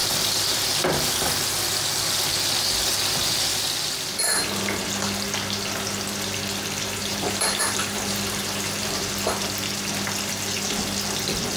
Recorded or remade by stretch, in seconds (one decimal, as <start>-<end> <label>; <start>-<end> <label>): 0.0-7.0 recorded; 7.0-9.1 remade; 9.1-11.6 recorded